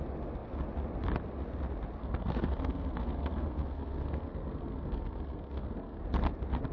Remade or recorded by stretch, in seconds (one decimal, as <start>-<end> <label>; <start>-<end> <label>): 0.0-2.0 recorded; 2.0-6.0 remade; 6.0-6.7 recorded